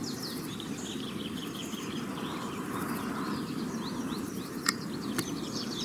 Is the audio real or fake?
fake